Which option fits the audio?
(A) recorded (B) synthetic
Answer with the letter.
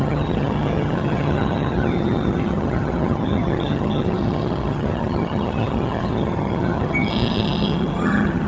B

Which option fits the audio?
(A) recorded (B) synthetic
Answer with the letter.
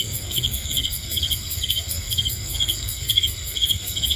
B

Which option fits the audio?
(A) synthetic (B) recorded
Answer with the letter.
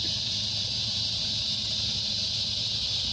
B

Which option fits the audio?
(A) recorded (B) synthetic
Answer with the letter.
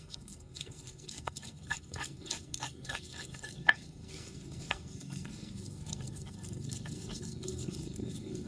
B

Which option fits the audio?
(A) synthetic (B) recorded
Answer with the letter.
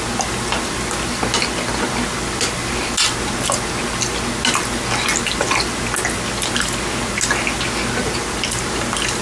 B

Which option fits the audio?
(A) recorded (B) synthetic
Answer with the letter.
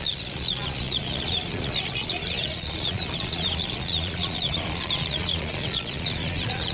B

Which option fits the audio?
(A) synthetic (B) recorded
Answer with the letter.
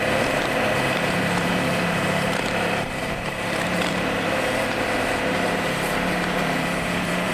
A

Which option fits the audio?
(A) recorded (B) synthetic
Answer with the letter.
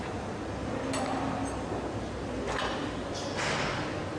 A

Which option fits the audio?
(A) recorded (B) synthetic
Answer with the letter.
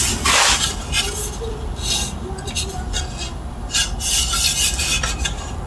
A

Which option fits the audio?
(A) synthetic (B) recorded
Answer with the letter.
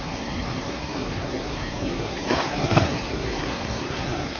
A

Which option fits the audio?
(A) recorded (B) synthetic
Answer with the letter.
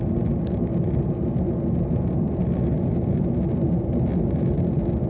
A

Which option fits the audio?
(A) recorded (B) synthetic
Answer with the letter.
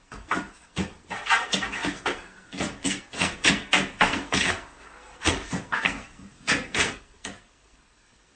B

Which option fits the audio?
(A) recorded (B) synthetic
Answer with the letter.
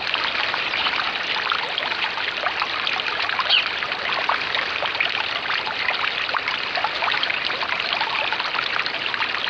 B